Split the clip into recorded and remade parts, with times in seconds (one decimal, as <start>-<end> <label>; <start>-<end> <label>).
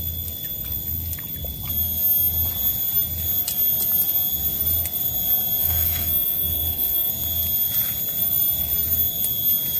0.0-5.6 recorded; 5.6-7.1 remade; 7.1-9.8 recorded